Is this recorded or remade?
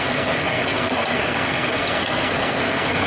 remade